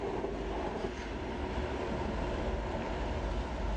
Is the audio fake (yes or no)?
no